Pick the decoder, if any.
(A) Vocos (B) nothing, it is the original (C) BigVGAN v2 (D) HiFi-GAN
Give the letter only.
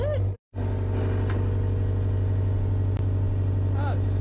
B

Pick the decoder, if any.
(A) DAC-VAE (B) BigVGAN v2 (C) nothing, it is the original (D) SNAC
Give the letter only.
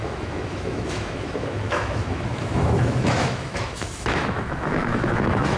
A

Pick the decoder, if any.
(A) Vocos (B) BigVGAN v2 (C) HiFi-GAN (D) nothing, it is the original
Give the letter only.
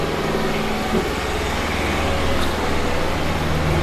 D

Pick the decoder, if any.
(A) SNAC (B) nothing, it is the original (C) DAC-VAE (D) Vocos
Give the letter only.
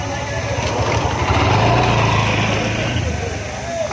B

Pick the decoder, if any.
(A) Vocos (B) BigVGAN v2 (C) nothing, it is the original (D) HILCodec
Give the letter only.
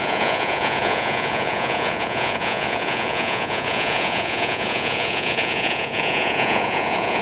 A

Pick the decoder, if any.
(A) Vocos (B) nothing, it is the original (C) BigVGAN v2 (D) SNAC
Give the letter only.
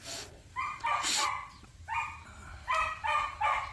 B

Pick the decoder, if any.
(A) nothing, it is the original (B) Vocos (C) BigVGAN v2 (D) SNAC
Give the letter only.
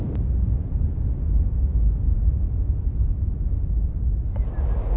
A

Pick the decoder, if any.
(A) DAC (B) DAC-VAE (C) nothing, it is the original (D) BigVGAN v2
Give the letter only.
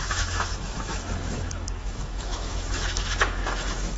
B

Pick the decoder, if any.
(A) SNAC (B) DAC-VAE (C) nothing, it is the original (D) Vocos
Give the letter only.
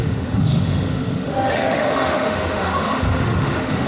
B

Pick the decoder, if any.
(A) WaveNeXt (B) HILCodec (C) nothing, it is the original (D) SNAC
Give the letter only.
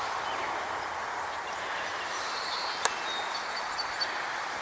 C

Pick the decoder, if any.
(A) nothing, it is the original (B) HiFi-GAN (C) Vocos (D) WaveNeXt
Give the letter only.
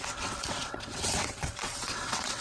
D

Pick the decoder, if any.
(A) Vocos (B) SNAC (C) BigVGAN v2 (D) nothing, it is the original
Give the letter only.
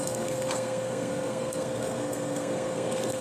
B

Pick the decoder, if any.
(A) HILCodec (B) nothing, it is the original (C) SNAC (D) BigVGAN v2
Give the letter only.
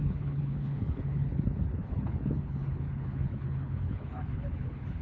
A